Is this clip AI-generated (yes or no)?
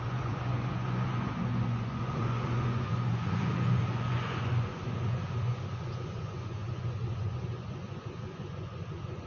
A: yes